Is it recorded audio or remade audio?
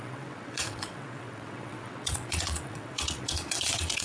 remade